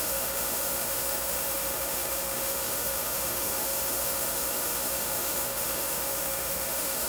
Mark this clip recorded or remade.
remade